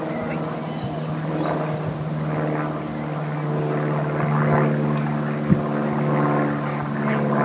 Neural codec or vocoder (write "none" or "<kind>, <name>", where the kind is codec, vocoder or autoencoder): none